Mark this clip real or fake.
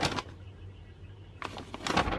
real